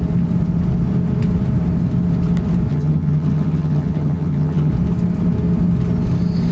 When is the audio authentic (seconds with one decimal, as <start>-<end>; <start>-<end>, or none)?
0.0-2.7; 4.7-6.5